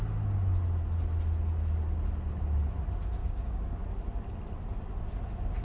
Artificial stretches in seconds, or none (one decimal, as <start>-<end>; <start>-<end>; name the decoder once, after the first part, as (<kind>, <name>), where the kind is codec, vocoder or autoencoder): 3.2-3.8 (codec, DAC)